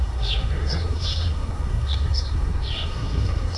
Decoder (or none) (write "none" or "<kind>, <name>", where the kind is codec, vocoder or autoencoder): codec, SNAC